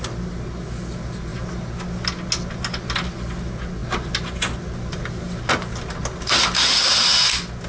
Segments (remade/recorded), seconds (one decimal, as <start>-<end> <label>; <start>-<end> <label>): 0.0-7.7 recorded